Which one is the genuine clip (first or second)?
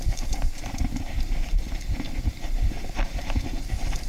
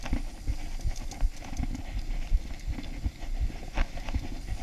second